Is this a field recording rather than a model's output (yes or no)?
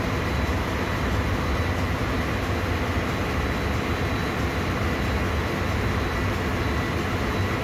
yes